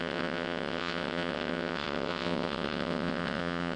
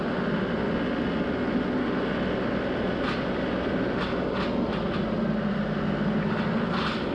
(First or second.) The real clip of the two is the second